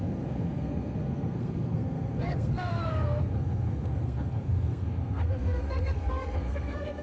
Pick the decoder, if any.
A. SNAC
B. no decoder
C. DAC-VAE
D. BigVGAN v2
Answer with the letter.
A